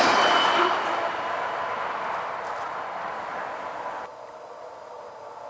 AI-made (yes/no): no